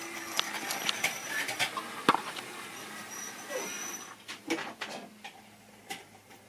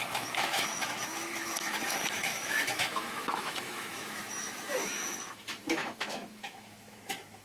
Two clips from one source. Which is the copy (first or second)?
second